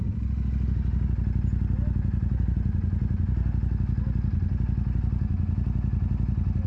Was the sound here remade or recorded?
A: recorded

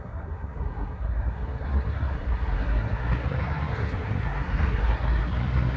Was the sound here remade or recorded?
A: remade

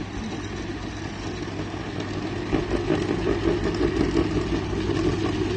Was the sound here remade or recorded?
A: recorded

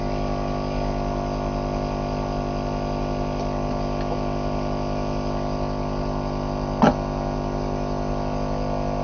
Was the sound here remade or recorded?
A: recorded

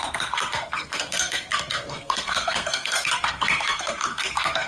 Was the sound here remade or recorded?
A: remade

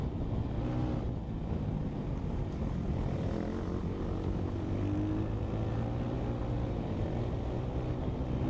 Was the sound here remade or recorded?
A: recorded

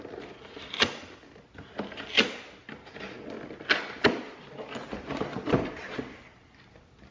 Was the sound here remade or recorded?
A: recorded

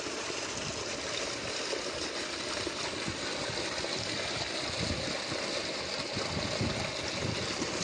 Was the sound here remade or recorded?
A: recorded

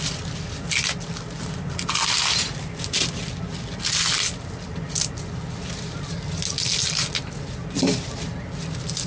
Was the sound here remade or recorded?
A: recorded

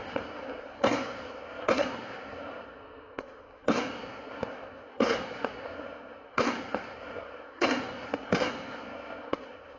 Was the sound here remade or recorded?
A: remade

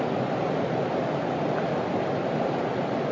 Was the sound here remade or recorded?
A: recorded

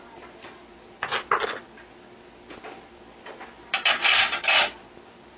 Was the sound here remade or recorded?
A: recorded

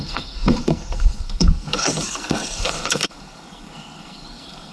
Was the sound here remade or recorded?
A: remade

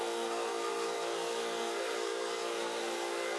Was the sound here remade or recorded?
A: remade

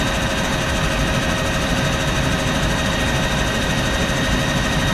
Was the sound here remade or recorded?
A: recorded